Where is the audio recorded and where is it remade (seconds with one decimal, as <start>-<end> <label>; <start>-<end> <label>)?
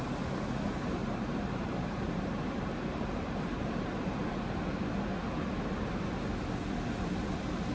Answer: 0.0-1.0 recorded; 1.0-4.6 remade; 4.6-7.7 recorded